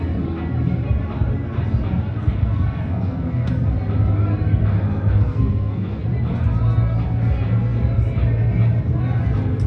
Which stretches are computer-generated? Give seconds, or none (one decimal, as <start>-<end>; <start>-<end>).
2.2-3.5; 4.6-6.0